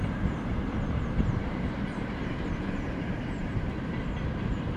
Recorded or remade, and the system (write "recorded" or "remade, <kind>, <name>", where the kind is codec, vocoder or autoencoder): remade, vocoder, BigVGAN v2